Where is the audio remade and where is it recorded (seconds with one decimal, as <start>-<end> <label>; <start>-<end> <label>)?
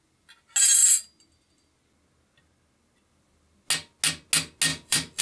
0.0-4.7 recorded; 4.7-5.2 remade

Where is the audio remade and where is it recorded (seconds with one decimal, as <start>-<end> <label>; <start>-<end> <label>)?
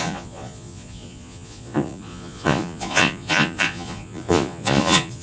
0.0-5.2 remade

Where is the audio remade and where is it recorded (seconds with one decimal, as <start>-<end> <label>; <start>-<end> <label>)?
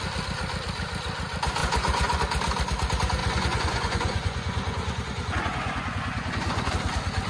0.0-1.6 recorded; 1.6-2.2 remade; 2.2-3.2 recorded; 3.2-6.7 remade; 6.7-7.3 recorded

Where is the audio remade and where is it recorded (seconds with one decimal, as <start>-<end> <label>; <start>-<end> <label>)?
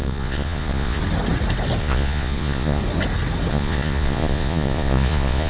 0.0-1.0 remade; 1.0-1.8 recorded; 1.8-2.8 remade; 2.8-3.5 recorded; 3.5-5.5 remade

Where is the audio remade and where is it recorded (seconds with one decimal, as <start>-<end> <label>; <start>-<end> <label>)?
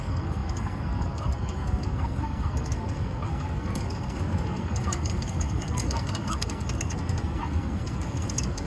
0.0-8.7 remade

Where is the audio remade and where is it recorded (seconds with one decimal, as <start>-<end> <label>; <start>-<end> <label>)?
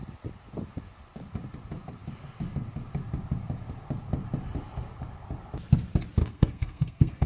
0.0-6.2 recorded; 6.2-7.3 remade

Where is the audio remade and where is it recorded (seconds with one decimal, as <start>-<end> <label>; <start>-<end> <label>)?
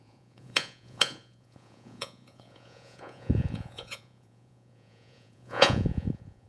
0.0-6.5 remade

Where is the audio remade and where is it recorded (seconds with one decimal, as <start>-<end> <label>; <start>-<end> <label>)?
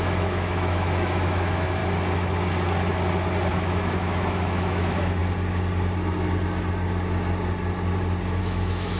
0.0-1.8 remade; 1.8-3.5 recorded; 3.5-5.2 remade; 5.2-8.4 recorded; 8.4-9.0 remade